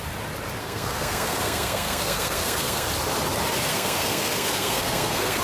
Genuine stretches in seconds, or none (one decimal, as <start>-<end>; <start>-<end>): 0.0-0.6; 2.9-3.7